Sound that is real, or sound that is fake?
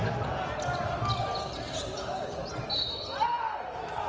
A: real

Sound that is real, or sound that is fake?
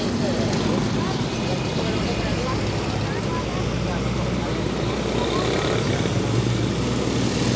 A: real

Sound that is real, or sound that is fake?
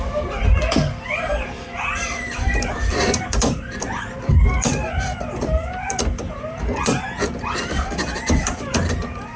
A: fake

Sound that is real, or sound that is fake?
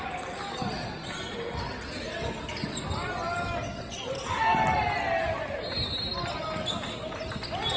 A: real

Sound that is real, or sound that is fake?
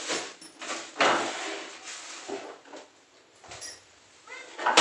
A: real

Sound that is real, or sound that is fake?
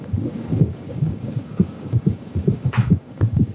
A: fake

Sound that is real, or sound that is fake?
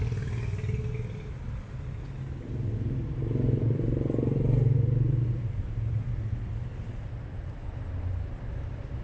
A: real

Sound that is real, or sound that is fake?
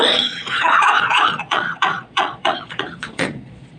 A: fake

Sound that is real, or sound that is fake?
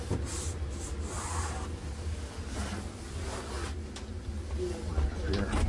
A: real